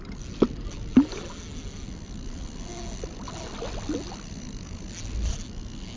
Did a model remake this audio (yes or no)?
no